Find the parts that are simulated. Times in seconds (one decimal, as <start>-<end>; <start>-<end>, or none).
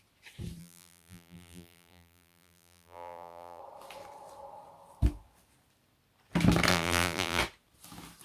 0.6-3.6; 6.7-7.4